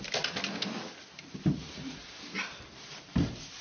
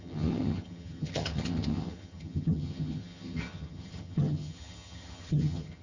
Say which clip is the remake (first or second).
second